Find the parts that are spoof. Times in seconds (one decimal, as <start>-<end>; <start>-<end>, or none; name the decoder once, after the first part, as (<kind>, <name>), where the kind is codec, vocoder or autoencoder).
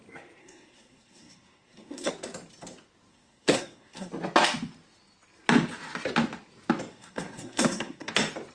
0.4-2.1 (codec, SNAC); 3.1-4.1; 6.9-8.1